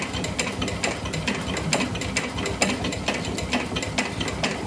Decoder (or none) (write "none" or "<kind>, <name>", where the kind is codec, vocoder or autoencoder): none